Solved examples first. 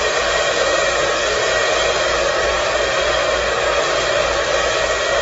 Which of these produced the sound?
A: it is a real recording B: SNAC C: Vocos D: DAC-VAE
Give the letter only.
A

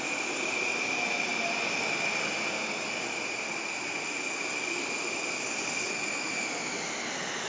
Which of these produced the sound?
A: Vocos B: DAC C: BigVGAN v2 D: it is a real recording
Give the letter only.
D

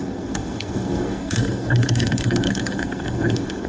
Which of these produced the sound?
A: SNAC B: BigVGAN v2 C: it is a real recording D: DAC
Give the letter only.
A